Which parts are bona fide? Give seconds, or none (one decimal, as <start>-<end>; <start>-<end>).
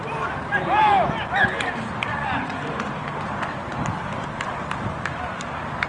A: 0.0-2.1; 2.6-5.9